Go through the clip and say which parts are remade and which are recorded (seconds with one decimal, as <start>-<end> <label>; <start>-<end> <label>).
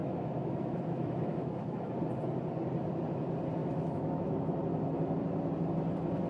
0.0-1.9 remade; 1.9-3.6 recorded; 3.6-4.4 remade; 4.4-6.3 recorded